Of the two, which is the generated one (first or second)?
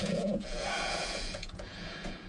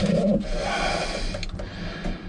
first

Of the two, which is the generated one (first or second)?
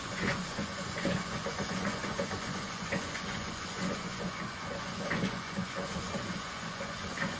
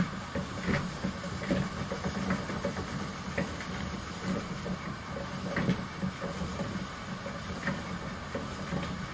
first